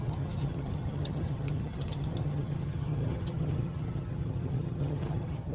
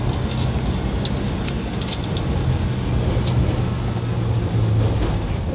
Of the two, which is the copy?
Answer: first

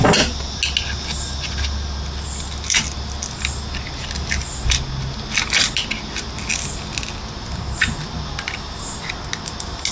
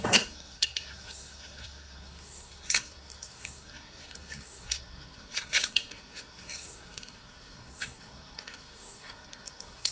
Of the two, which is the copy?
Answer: second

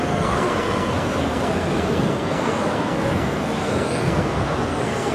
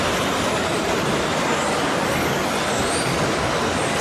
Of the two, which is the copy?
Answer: first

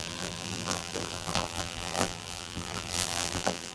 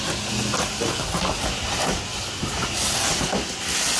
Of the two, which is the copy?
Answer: first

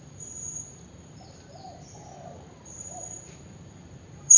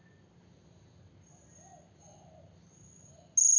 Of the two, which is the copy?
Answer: first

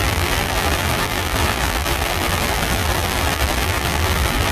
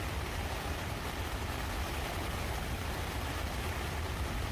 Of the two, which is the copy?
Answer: first